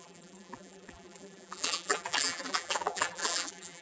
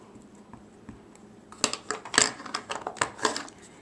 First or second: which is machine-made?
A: first